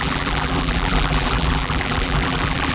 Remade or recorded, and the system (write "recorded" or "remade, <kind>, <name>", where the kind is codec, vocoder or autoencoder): remade, vocoder, BigVGAN v2